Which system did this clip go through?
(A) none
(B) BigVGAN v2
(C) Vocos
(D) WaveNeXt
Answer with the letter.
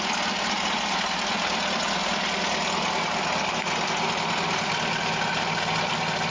A